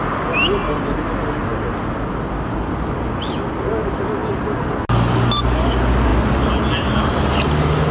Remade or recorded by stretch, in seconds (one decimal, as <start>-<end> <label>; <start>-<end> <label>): 0.0-0.6 recorded; 0.6-1.1 remade; 1.1-6.1 recorded; 6.1-7.2 remade; 7.2-7.9 recorded